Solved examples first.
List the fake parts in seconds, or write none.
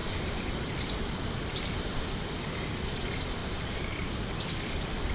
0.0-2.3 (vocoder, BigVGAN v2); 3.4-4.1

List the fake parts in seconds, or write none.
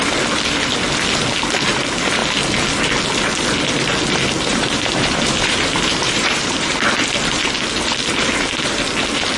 4.5-6.7 (vocoder, BigVGAN v2)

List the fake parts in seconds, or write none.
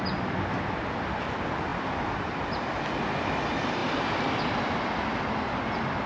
1.7-2.8 (vocoder, BigVGAN v2)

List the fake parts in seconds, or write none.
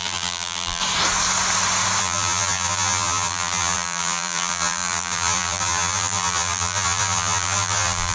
0.0-0.8 (vocoder, BigVGAN v2); 2.0-8.1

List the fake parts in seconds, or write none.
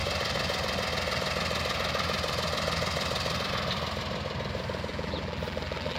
4.9-6.0 (vocoder, BigVGAN v2)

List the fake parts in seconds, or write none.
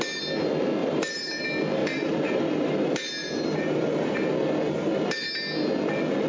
0.8-1.4 (vocoder, BigVGAN v2); 1.8-2.8; 3.2-4.3